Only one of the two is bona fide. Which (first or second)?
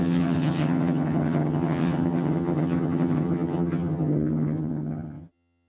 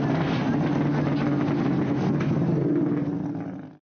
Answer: second